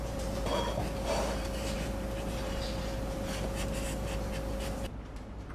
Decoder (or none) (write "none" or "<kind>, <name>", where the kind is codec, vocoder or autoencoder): vocoder, BigVGAN v2